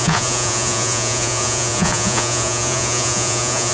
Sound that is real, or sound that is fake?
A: fake